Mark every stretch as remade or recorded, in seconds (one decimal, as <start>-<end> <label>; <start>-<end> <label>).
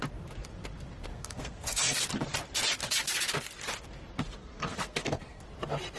0.0-1.1 recorded; 1.1-2.0 remade; 2.0-4.4 recorded; 4.4-5.4 remade; 5.4-6.0 recorded